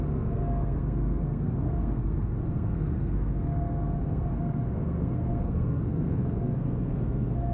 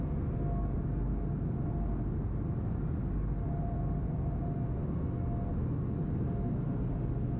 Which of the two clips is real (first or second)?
second